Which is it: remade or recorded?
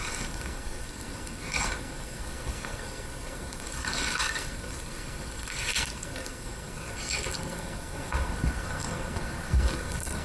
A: remade